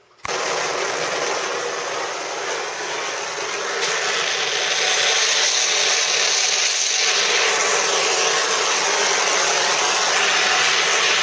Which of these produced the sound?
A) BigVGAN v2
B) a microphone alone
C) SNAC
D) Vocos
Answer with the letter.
B